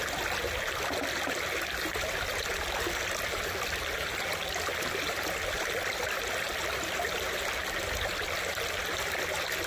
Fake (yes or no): no